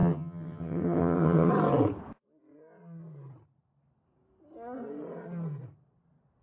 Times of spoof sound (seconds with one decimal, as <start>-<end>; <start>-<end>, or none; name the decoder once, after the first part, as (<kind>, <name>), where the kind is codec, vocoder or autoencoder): 0.0-1.5 (vocoder, HiFi-GAN)